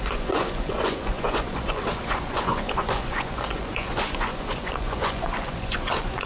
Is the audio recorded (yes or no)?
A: no